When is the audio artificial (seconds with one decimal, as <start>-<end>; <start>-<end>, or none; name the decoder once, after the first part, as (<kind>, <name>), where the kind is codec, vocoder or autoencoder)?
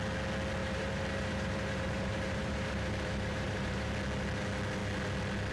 0.6-3.9 (vocoder, BigVGAN v2)